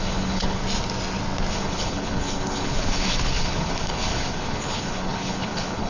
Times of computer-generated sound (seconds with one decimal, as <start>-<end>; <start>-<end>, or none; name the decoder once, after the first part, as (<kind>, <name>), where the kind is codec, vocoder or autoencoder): 0.0-0.6 (codec, HILCodec); 1.5-5.9